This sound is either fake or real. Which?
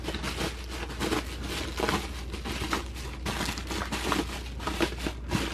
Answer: real